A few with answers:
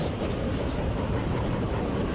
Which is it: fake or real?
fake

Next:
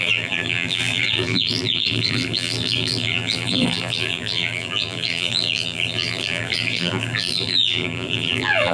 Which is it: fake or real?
fake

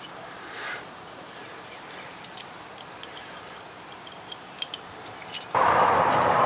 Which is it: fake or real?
fake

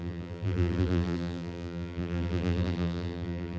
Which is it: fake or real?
fake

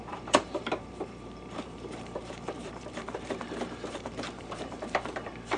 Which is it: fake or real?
fake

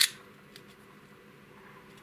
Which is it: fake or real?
real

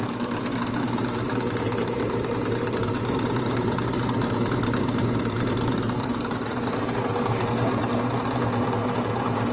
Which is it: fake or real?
fake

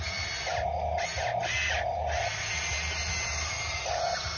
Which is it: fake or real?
real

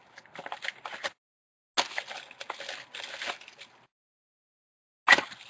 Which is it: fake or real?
real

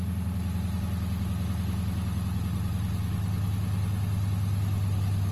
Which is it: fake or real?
real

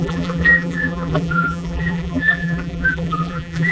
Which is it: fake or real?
fake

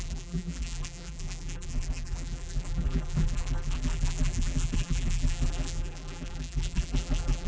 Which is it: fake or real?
fake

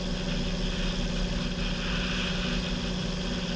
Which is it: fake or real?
real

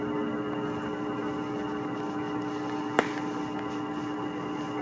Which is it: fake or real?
real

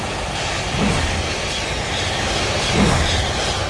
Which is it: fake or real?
real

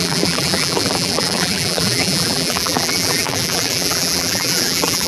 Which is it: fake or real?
fake